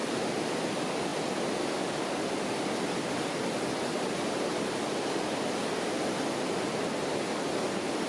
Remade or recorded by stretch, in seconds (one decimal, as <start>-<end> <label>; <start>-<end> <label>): 0.0-8.1 recorded